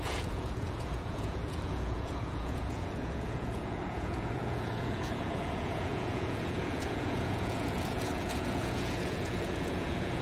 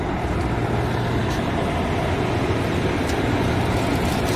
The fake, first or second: first